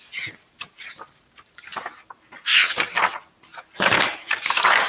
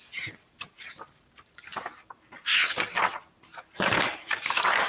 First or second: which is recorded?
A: first